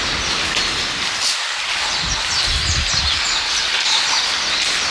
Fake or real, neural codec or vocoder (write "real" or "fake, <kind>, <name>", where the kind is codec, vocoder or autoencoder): real